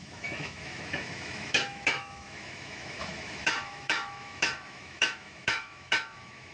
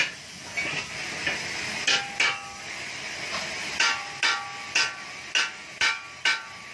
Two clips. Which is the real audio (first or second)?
second